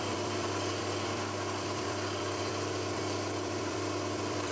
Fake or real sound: fake